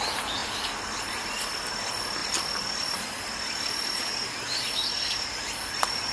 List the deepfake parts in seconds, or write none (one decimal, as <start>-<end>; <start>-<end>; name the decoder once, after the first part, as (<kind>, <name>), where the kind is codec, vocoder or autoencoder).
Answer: none